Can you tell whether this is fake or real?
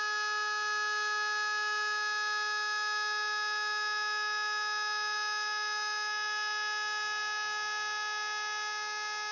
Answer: real